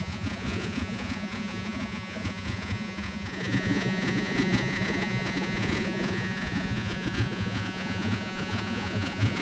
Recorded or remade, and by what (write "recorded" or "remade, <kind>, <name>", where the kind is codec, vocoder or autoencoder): remade, vocoder, Vocos